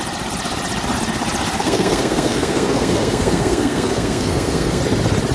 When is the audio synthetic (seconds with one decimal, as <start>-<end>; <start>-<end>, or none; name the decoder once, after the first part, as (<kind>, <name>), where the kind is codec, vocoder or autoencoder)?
1.6-4.8 (codec, SNAC)